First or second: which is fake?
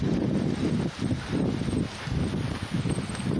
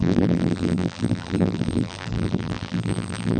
second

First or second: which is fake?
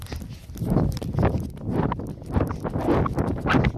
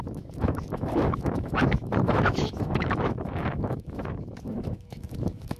second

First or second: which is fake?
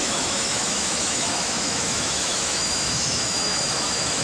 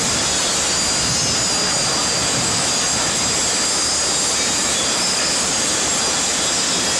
first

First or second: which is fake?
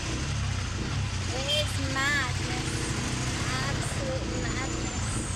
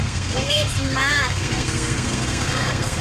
second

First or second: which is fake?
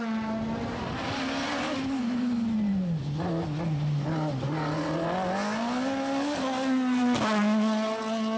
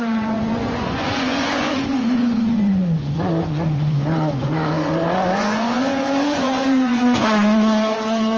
second